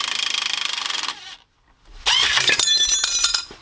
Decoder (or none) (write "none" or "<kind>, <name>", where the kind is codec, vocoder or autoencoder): none